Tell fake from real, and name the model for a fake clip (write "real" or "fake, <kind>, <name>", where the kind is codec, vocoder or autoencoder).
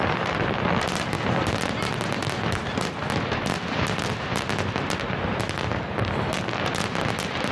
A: real